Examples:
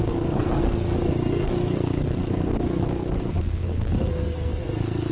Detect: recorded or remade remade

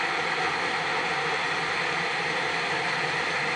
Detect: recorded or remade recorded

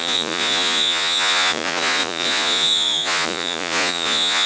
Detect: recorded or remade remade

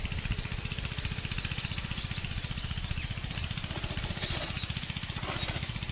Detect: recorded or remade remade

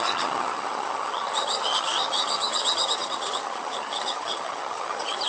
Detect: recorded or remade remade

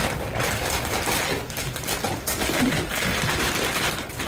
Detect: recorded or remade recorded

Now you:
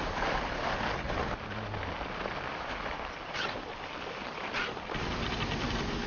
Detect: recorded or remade recorded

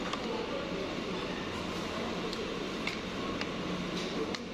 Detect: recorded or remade recorded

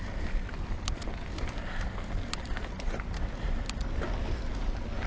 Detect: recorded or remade recorded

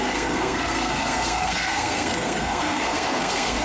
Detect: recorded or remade remade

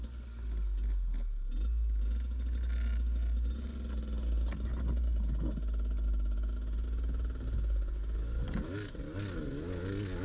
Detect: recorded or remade recorded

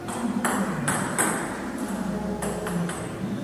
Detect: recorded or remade remade